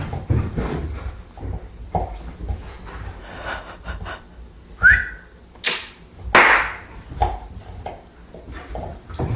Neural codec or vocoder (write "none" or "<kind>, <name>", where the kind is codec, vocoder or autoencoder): none